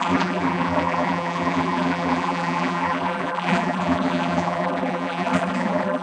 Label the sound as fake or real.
fake